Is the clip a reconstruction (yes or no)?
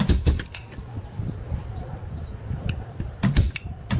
yes